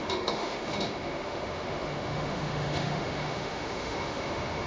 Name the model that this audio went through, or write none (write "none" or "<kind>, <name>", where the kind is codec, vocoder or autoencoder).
autoencoder, DAC-VAE